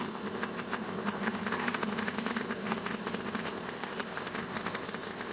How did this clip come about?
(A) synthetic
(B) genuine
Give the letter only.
A